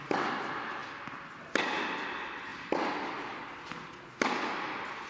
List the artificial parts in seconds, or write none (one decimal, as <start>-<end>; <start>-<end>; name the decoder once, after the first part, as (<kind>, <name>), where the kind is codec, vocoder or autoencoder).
none